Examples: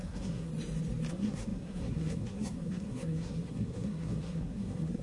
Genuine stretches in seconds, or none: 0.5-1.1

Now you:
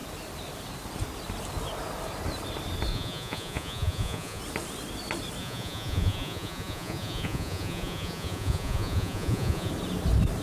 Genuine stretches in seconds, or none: 0.0-2.9; 4.4-5.4; 9.7-10.4

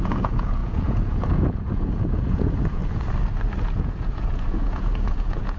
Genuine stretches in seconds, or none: 2.8-3.6

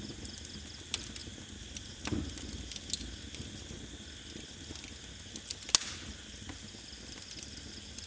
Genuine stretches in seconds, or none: 0.0-8.1